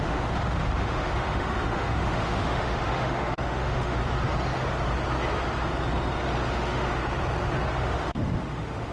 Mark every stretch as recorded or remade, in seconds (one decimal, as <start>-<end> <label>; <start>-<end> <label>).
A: 0.0-4.0 remade; 4.0-6.5 recorded; 6.5-7.0 remade; 7.0-7.8 recorded; 7.8-8.9 remade